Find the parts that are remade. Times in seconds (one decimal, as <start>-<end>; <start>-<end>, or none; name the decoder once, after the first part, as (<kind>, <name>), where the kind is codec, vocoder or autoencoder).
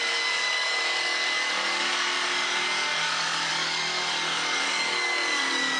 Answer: 0.0-5.8 (codec, DAC)